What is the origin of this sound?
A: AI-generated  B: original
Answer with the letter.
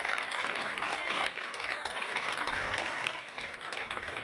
A